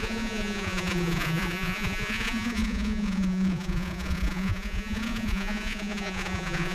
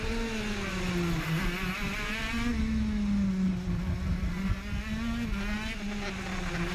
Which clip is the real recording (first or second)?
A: second